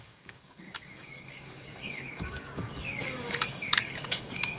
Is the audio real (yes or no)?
no